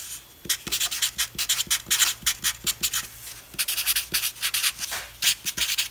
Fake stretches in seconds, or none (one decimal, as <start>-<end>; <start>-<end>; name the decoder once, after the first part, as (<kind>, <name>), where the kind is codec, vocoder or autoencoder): none